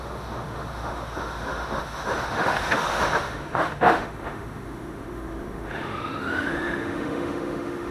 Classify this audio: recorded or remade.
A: remade